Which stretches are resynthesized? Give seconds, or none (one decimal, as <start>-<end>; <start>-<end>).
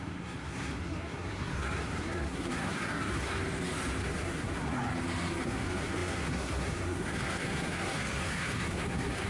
0.0-3.3; 4.0-4.8; 5.4-9.3